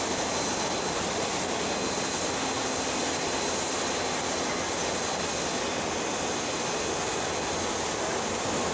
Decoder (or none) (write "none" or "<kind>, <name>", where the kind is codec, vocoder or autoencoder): none